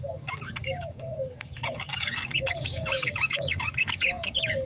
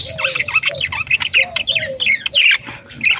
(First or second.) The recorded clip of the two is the second